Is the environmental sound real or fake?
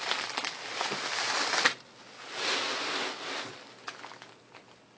real